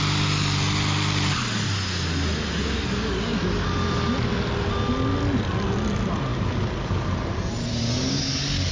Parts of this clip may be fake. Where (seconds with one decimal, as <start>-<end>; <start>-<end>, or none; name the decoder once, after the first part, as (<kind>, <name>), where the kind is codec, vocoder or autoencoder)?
none